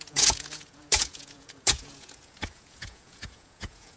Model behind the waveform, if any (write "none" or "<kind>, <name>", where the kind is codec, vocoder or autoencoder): vocoder, Vocos